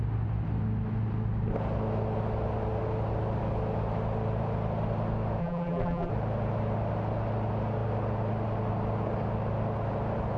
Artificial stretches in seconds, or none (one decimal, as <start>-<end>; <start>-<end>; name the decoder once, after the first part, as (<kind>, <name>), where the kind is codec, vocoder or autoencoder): 5.4-6.1 (vocoder, BigVGAN v2)

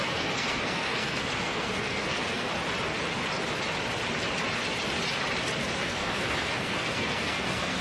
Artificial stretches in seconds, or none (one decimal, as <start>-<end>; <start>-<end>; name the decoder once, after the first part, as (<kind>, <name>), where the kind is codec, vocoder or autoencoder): 0.0-2.5 (codec, SNAC); 5.8-7.8

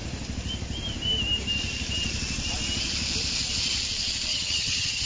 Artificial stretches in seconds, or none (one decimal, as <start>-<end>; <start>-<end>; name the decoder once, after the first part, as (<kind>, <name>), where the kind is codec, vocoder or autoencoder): 4.3-5.1 (vocoder, HiFi-GAN)

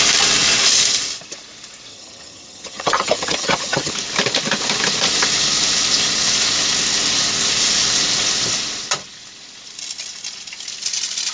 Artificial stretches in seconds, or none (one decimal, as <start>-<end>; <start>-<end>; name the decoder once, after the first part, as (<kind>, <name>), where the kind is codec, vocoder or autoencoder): 1.9-3.9 (vocoder, HiFi-GAN)